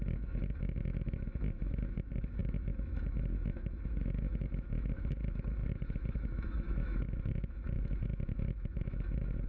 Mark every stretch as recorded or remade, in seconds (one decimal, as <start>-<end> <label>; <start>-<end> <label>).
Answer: 0.0-9.5 remade